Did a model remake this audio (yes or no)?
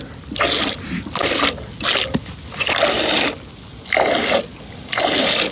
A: no